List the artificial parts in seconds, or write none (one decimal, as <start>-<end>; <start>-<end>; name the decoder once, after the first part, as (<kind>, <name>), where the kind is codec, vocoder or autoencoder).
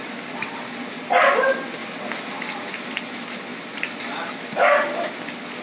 none